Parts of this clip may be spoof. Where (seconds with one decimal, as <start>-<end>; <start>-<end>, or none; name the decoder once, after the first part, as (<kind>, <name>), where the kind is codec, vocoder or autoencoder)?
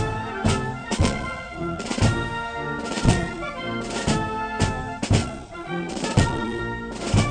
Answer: 0.8-2.0 (vocoder, Vocos); 2.9-3.5; 5.2-6.6